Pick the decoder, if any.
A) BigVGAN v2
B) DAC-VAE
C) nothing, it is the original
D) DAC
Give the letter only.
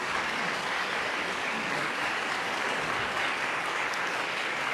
D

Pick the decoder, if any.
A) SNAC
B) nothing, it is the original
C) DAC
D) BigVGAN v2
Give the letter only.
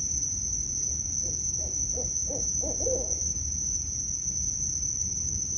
B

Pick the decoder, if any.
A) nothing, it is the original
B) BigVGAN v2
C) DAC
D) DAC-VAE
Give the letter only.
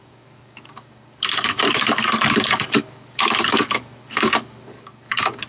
C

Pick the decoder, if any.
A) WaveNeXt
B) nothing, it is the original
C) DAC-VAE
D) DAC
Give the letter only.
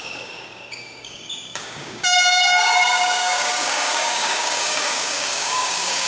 D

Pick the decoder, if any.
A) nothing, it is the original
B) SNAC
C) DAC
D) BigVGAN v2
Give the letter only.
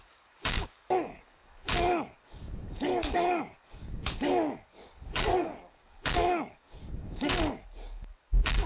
C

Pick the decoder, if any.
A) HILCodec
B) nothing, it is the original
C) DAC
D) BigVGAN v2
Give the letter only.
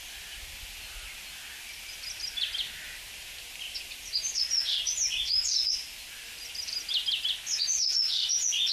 B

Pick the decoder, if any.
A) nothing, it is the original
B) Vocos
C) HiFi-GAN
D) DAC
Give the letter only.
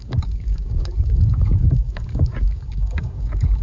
D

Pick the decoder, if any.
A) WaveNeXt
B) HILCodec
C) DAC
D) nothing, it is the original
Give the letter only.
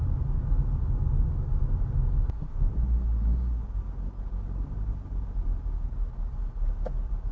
D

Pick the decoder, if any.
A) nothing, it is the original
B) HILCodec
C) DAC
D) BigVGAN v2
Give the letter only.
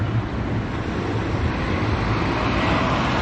A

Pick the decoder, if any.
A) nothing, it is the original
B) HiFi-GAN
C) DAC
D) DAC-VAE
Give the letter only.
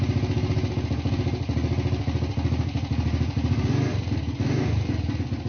A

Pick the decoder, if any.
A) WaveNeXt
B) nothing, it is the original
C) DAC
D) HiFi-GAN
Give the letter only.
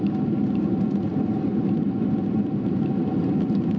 B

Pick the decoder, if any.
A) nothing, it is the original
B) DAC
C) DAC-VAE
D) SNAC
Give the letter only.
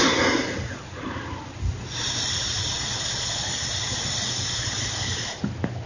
A